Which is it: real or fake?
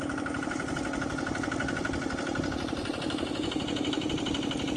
real